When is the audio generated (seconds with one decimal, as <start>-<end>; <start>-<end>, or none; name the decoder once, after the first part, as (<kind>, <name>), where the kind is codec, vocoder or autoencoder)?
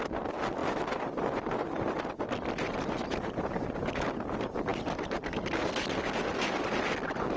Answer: none